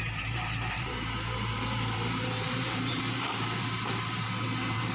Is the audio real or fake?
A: fake